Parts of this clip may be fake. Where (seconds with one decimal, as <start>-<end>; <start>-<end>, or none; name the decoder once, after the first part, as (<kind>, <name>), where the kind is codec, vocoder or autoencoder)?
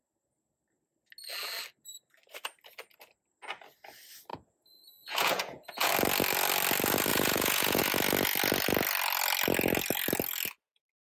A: 4.3-5.9 (vocoder, Vocos); 7.1-7.8